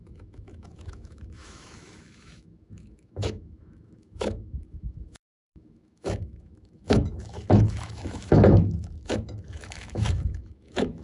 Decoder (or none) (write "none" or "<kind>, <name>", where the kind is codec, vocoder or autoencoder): autoencoder, DAC-VAE